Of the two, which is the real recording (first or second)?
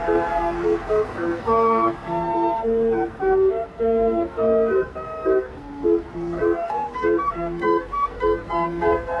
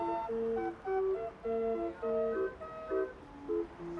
second